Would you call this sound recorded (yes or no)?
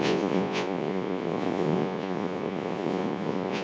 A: no